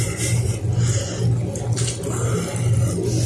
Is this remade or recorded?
recorded